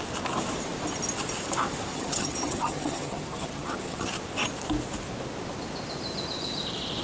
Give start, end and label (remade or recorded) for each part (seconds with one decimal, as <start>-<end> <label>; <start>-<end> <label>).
0.0-1.9 recorded; 1.9-4.1 remade; 4.1-7.0 recorded